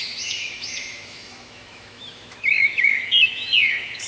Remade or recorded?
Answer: remade